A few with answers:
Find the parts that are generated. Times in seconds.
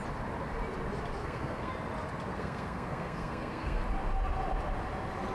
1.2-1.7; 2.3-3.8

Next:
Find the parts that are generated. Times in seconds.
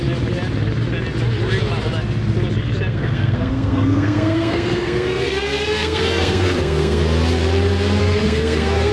2.9-7.0; 8.0-8.9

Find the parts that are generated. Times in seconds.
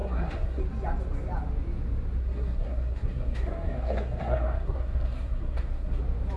0.0-0.6; 2.2-6.0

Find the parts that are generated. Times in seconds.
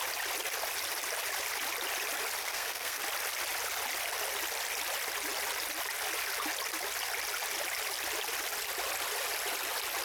2.4-3.0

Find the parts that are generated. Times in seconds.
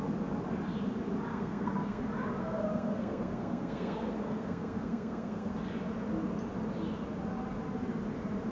1.3-2.0; 2.4-5.5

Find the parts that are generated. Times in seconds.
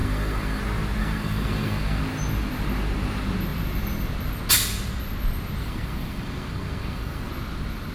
0.0-0.6; 1.0-2.0; 5.6-7.3